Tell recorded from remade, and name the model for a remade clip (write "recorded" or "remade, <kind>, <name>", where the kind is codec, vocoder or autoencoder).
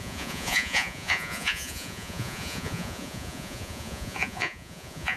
remade, vocoder, Vocos